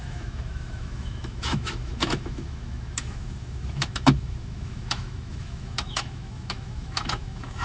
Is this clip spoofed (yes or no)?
yes